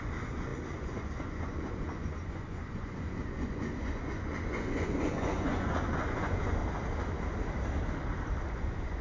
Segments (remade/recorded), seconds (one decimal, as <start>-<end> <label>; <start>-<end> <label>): 0.0-6.6 remade; 6.6-8.5 recorded; 8.5-9.0 remade